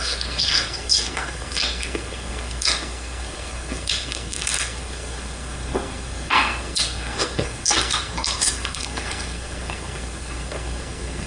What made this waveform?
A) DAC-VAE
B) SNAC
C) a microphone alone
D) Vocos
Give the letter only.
B